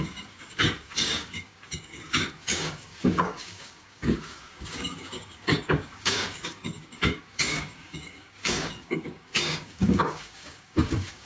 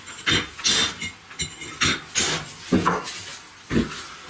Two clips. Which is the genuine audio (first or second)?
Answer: second